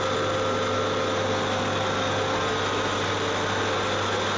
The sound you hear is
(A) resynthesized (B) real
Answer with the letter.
B